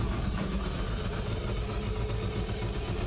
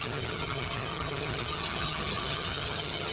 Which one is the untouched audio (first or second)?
first